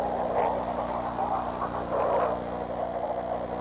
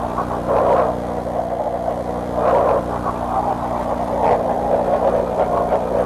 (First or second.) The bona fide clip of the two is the first